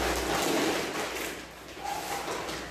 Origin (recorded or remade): recorded